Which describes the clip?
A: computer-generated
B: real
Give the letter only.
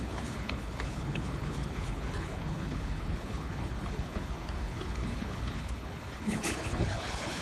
A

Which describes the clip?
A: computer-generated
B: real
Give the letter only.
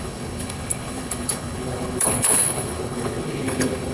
A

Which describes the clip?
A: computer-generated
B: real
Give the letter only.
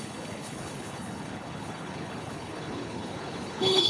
A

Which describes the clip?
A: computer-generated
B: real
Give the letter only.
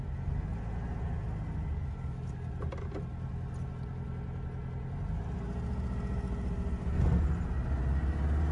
B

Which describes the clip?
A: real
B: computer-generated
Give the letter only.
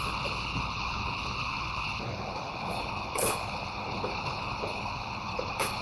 B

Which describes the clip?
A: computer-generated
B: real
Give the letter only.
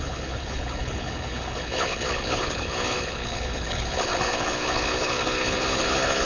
A